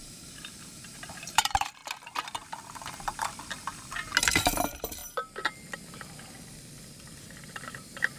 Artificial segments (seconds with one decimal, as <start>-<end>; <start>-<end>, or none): 0.0-1.8; 4.2-5.0; 7.5-8.2